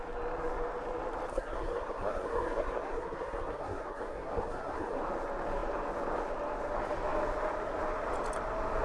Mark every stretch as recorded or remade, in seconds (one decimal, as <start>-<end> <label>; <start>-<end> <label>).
0.0-1.3 recorded; 1.3-5.0 remade; 5.0-8.8 recorded